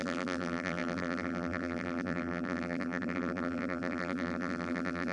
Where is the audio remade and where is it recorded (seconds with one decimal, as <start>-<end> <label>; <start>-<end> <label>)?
0.0-5.1 remade